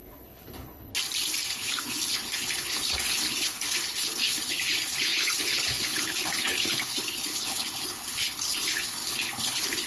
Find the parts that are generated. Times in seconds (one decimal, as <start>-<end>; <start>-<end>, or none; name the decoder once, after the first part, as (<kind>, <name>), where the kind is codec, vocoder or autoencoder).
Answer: 0.0-0.9 (codec, HILCodec); 1.5-9.9